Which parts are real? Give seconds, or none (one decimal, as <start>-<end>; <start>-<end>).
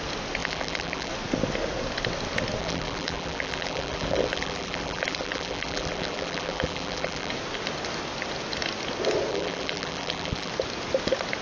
0.0-0.4; 1.1-2.6; 7.3-9.3; 10.5-11.4